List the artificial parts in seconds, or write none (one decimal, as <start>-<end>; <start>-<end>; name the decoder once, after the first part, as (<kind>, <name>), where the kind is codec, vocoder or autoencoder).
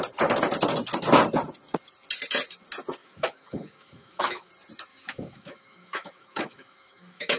3.0-4.5 (autoencoder, DAC-VAE); 4.9-7.4